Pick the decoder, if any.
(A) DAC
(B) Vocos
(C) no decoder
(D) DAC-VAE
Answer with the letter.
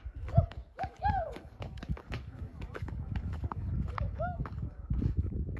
A